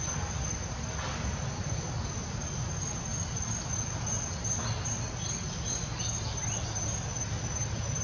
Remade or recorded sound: recorded